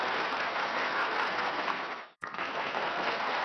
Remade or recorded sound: remade